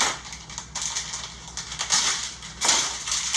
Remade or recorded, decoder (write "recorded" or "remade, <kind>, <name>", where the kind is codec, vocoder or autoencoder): recorded